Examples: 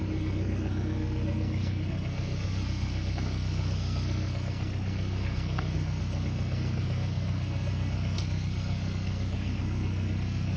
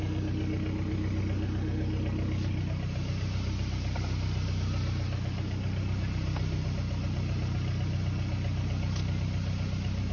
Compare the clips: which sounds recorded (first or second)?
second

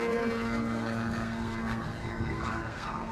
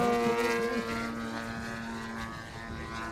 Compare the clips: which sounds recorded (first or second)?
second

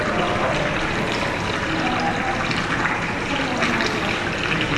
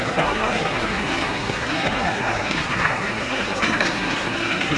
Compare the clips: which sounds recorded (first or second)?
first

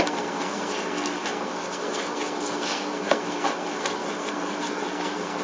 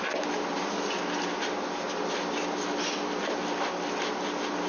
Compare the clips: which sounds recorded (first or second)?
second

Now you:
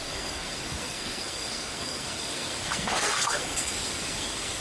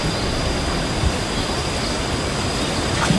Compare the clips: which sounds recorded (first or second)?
second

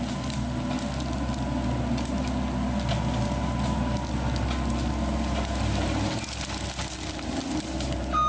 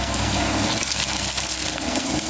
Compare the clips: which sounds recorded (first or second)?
first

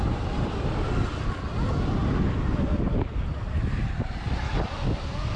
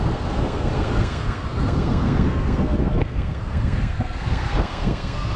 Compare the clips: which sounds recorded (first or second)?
first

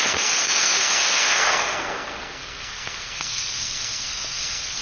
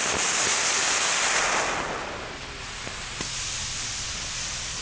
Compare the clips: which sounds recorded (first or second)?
second